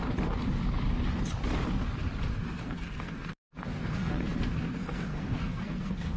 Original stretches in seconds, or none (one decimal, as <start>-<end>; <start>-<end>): 0.0-2.4